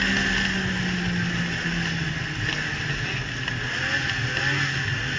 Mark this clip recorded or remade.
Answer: recorded